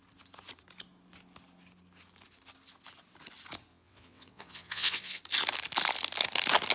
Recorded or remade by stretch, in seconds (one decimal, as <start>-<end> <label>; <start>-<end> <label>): 0.0-3.7 recorded; 3.7-5.2 remade; 5.2-6.7 recorded